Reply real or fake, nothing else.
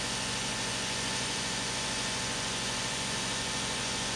fake